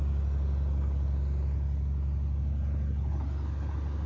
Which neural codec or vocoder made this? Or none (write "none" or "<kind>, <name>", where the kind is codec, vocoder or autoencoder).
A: none